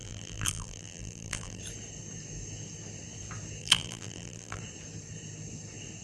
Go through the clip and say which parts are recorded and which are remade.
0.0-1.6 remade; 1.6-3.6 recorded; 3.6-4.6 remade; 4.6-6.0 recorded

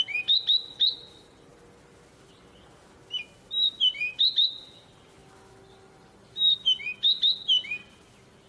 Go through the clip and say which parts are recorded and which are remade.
0.0-5.2 recorded; 5.2-6.5 remade; 6.5-8.5 recorded

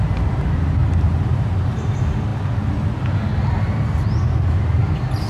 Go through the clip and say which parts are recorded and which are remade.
0.0-0.8 recorded; 0.8-1.9 remade; 1.9-5.3 recorded

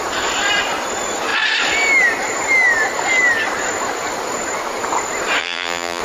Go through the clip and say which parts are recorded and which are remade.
0.0-5.4 recorded; 5.4-6.0 remade

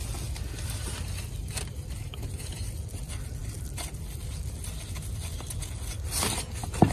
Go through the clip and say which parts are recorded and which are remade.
0.0-1.4 recorded; 1.4-2.7 remade; 2.7-6.9 recorded